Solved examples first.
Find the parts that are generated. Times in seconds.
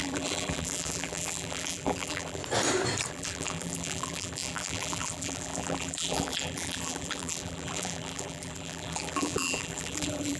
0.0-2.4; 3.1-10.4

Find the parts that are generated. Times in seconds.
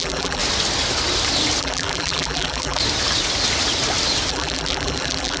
0.0-0.4; 1.6-2.8; 4.3-5.4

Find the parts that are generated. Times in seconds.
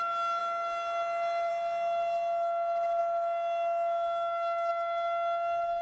none